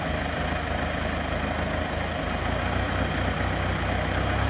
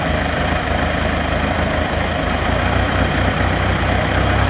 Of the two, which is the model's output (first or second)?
second